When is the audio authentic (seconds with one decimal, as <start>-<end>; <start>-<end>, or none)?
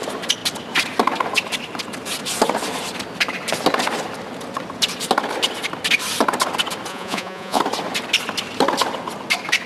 0.0-6.9; 7.6-9.7